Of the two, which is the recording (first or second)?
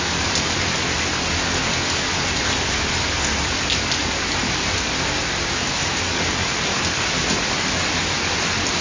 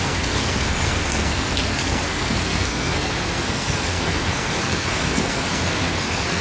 first